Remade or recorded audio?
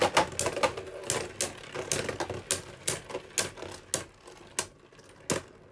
recorded